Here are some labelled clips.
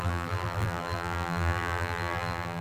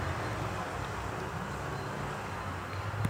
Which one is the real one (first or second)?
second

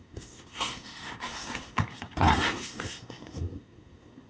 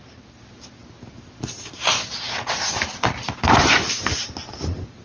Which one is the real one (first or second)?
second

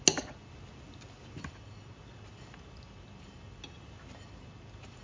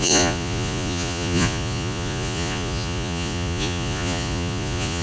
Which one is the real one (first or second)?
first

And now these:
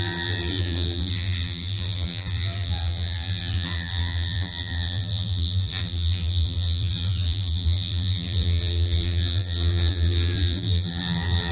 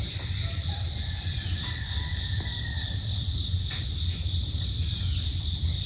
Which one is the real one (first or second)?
second